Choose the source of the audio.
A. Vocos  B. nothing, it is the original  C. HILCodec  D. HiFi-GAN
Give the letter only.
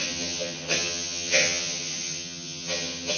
D